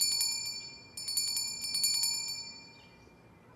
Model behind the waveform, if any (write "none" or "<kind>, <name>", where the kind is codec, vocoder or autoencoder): none